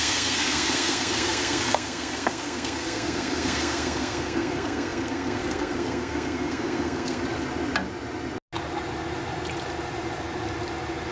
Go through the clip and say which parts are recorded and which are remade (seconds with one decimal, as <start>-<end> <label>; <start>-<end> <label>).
0.0-7.2 remade; 7.2-11.1 recorded